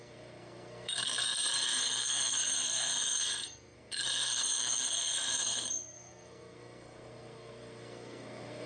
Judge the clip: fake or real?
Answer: fake